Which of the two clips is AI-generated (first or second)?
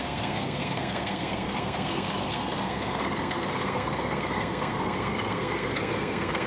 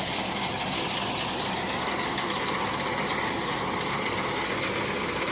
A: first